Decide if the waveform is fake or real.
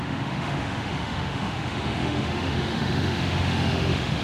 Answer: fake